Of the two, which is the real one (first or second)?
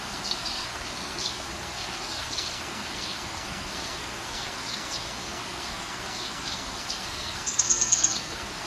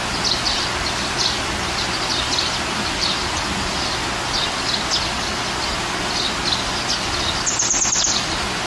second